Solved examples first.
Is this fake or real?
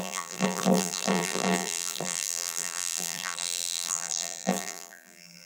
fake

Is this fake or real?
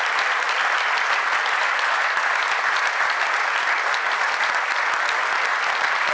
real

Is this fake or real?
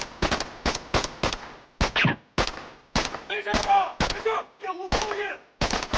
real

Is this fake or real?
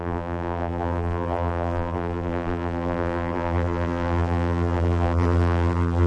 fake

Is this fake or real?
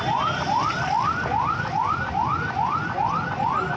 real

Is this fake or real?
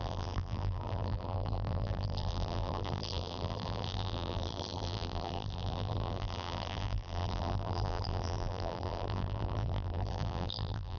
fake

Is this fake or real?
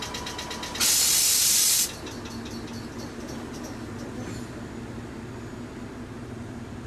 real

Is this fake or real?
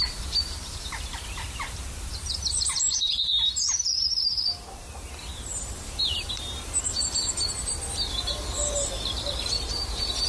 fake